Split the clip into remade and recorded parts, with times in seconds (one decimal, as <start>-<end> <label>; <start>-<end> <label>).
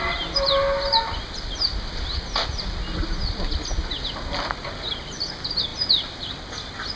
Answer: 0.0-7.0 recorded